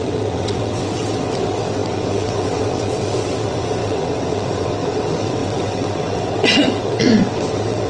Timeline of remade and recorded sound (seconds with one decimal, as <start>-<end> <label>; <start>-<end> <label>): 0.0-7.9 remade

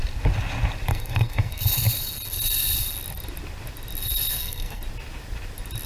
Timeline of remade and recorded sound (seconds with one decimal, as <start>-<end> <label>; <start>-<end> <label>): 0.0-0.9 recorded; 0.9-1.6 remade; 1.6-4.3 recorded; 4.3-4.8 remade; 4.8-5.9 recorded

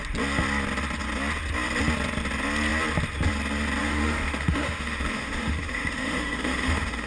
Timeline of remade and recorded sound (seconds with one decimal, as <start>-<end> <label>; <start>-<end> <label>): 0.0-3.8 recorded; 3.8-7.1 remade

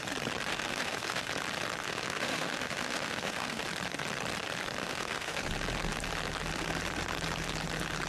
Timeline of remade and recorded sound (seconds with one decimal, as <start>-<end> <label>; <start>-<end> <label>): 0.0-0.5 recorded; 0.5-1.3 remade; 1.3-1.8 recorded; 1.8-3.6 remade; 3.6-4.8 recorded; 4.8-5.4 remade; 5.4-8.1 recorded

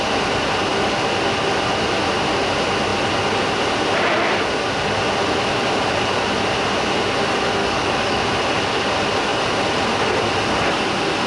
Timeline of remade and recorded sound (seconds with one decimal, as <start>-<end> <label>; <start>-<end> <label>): 0.0-7.6 recorded; 7.6-8.2 remade; 8.2-11.3 recorded

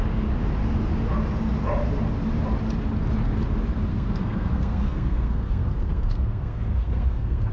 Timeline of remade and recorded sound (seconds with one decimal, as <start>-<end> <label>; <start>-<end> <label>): 0.0-3.9 recorded; 3.9-7.5 remade

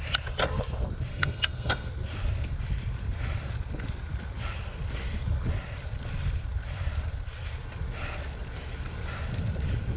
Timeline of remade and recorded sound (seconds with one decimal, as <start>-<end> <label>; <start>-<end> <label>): 0.0-1.1 recorded; 1.1-1.9 remade; 1.9-10.0 recorded

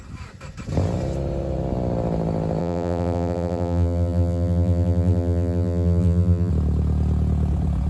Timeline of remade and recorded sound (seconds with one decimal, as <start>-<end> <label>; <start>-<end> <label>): 0.0-2.6 recorded; 2.6-6.5 remade; 6.5-7.9 recorded